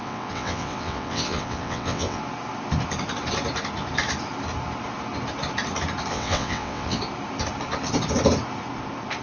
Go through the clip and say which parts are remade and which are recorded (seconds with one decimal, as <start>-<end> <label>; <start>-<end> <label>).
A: 0.0-2.2 remade; 2.2-6.1 recorded; 6.1-7.0 remade; 7.0-9.2 recorded